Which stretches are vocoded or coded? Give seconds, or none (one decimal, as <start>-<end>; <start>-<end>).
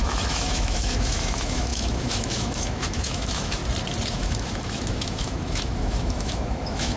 0.0-3.6; 4.1-7.0